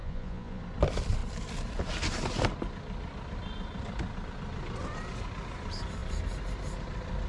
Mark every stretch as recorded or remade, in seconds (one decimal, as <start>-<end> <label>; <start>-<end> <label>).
0.0-0.6 remade; 0.6-7.3 recorded